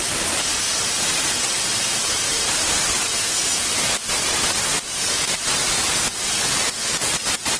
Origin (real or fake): real